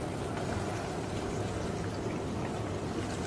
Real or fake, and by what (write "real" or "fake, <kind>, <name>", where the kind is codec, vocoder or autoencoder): real